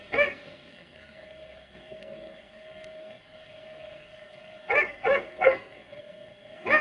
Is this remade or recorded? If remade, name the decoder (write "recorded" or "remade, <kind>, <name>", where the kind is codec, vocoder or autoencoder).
remade, codec, SNAC